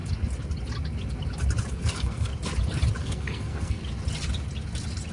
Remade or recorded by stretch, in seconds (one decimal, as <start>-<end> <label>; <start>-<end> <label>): 0.0-1.7 recorded; 1.7-2.3 remade; 2.3-3.0 recorded; 3.0-3.8 remade; 3.8-5.1 recorded